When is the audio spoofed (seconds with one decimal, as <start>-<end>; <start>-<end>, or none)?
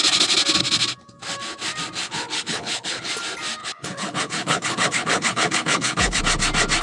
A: 2.0-3.1; 3.6-6.2